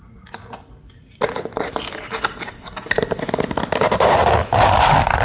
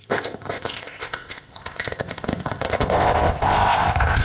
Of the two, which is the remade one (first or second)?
second